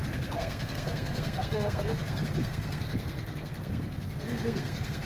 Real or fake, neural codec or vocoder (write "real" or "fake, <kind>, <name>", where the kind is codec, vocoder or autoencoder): fake, codec, SNAC